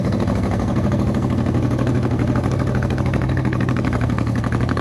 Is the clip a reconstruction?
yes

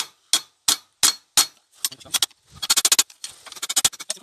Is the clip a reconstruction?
no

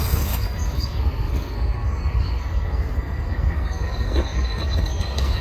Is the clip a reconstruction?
yes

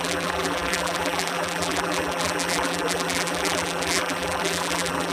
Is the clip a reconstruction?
yes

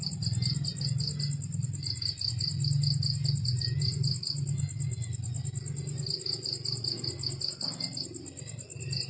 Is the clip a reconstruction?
no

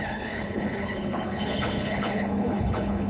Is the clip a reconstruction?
yes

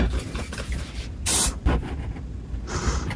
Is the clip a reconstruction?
no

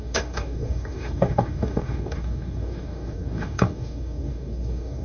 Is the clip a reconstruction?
yes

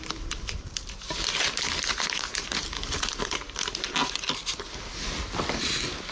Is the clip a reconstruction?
no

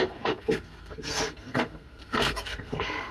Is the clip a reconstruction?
yes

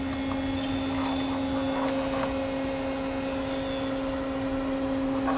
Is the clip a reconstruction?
no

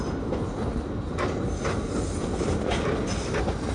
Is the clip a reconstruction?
no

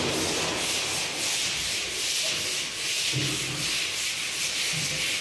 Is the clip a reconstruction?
no